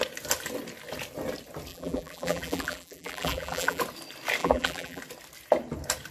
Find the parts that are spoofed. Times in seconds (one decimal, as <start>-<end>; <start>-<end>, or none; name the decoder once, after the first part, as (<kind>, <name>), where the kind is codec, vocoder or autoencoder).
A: 1.7-3.8 (vocoder, BigVGAN v2); 4.4-5.0